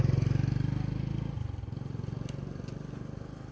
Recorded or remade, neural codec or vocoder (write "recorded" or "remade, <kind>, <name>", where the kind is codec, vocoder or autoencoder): recorded